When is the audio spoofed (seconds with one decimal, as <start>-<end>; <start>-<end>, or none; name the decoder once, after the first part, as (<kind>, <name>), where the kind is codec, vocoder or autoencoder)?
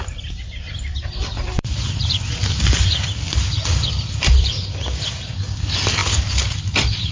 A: 1.2-5.5 (vocoder, BigVGAN v2)